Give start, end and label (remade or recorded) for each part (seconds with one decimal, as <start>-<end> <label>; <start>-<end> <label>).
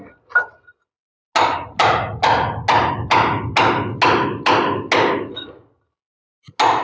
0.0-6.8 recorded